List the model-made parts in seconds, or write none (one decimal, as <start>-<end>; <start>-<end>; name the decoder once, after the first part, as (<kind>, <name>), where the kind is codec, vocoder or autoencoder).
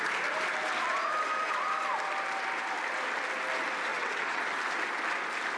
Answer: 3.9-4.4 (vocoder, WaveNeXt)